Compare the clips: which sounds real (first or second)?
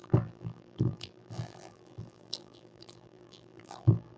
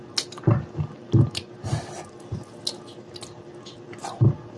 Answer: second